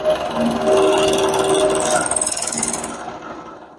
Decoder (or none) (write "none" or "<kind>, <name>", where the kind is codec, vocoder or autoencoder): none